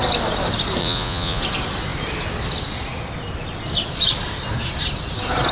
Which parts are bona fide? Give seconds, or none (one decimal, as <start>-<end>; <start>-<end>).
0.0-0.8; 1.4-5.5